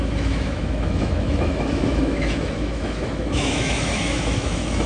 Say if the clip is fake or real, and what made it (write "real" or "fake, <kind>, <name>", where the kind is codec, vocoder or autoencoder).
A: fake, autoencoder, DAC-VAE